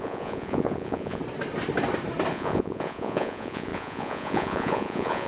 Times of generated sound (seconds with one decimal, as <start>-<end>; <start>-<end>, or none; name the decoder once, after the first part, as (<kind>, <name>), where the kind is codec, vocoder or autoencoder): 0.0-1.2 (vocoder, Vocos); 2.3-5.3